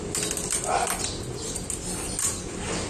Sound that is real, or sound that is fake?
real